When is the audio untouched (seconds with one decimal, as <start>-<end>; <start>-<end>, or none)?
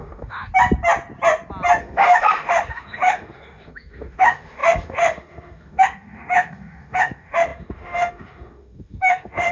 0.5-1.8